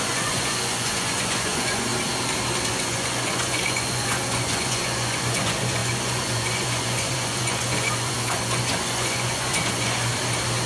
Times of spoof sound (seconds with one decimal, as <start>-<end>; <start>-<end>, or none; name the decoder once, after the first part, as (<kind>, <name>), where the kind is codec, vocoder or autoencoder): 0.0-1.9 (vocoder, Vocos); 2.7-10.1